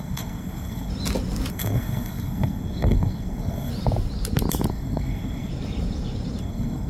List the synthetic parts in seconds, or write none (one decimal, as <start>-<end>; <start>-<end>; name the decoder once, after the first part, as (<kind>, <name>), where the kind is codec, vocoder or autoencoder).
0.0-0.9 (codec, SNAC); 1.5-3.7; 4.7-5.5; 6.4-6.9